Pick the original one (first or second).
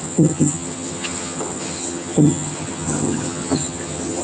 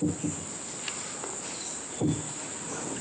second